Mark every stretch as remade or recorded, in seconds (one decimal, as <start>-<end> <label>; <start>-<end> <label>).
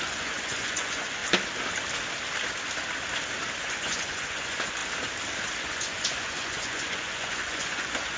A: 0.0-1.2 remade; 1.2-3.6 recorded; 3.6-4.8 remade; 4.8-5.6 recorded; 5.6-8.2 remade